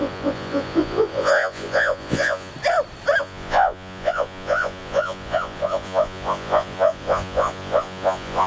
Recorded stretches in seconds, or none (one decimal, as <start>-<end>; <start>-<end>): 2.5-3.2